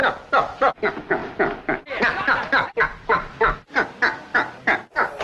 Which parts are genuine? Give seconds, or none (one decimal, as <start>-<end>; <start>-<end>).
0.0-5.2